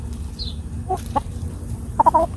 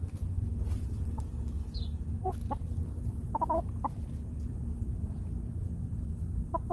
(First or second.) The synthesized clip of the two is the second